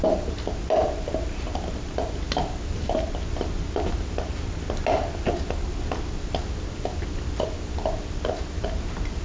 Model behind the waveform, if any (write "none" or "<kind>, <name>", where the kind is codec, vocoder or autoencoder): none